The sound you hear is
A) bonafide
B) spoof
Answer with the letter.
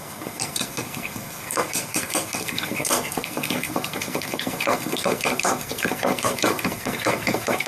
B